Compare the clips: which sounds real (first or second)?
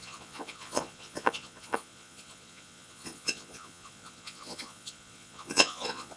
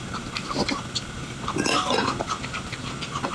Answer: second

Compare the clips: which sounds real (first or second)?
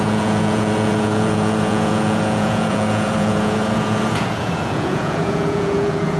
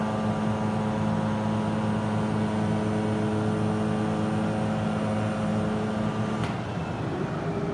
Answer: second